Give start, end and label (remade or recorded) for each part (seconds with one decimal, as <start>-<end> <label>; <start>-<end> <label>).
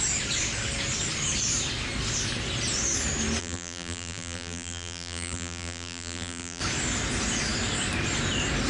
0.0-3.4 recorded; 3.4-6.6 remade; 6.6-8.7 recorded